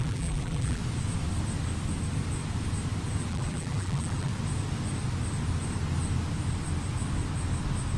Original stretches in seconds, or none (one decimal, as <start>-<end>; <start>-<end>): 0.8-3.3; 4.3-8.0